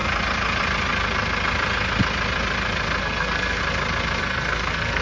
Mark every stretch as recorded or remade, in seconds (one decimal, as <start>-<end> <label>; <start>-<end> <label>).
0.0-3.0 recorded; 3.0-3.6 remade; 3.6-4.2 recorded; 4.2-5.0 remade